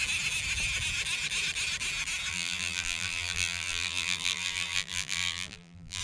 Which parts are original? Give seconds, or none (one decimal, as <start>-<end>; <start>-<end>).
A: 0.0-2.3